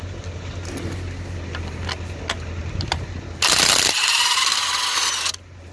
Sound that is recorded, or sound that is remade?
recorded